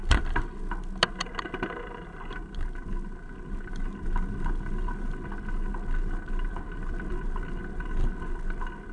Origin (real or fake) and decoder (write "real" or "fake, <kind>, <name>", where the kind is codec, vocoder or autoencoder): real